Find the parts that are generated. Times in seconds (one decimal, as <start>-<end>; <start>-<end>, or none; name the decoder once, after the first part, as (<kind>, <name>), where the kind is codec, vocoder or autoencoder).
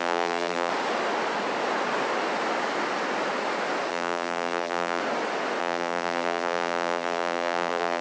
0.0-0.7 (vocoder, BigVGAN v2); 3.9-5.0; 5.6-8.0